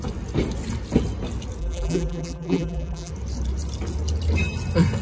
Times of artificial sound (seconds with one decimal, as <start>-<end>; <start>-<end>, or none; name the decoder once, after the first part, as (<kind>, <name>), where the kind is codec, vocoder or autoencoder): 1.6-3.1 (vocoder, BigVGAN v2)